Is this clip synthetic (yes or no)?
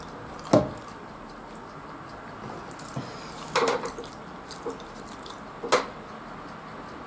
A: no